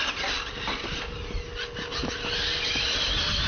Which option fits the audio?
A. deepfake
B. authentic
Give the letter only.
B